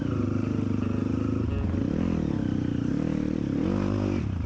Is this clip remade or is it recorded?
recorded